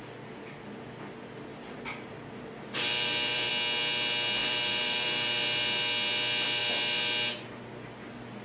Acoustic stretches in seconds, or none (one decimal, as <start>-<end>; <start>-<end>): 0.0-1.5; 3.5-4.4; 5.3-8.4